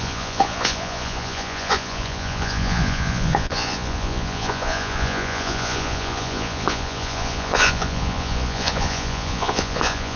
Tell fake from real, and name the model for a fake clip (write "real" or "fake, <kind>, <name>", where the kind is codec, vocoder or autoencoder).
fake, vocoder, Vocos